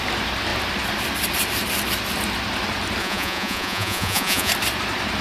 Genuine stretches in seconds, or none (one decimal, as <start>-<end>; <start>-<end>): 0.0-3.0; 4.5-5.2